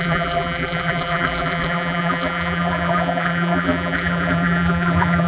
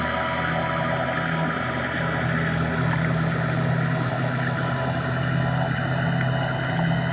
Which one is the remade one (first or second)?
first